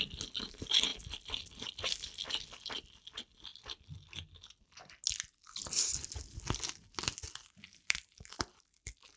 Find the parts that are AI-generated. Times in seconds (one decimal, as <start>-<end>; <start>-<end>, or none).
none